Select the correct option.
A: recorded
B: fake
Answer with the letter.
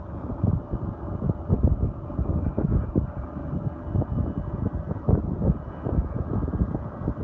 A